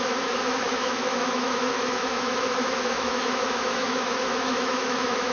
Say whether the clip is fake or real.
fake